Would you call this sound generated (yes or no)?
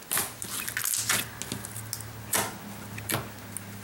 no